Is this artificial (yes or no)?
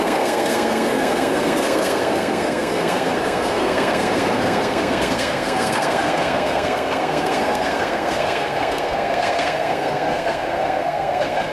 yes